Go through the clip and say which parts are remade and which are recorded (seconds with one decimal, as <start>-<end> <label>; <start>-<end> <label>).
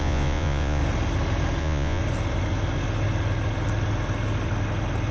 0.0-0.8 remade; 0.8-1.6 recorded; 1.6-2.0 remade; 2.0-5.1 recorded